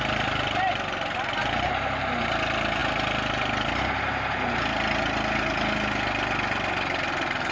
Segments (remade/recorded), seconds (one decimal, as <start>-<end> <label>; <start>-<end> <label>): 0.0-7.5 recorded